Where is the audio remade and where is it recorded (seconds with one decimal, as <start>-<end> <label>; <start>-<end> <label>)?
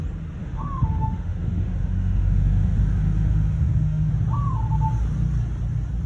0.0-0.4 recorded; 0.4-4.1 remade; 4.1-6.1 recorded